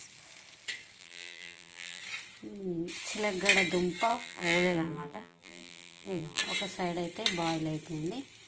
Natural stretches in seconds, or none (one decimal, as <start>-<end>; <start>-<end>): 0.0-1.0; 2.0-4.1; 6.4-8.5